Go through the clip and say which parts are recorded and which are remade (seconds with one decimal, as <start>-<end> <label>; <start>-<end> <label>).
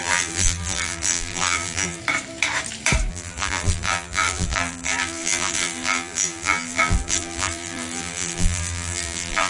0.0-2.0 remade; 2.0-3.1 recorded; 3.1-9.5 remade